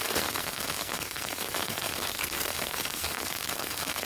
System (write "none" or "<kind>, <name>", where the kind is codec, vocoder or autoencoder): codec, SNAC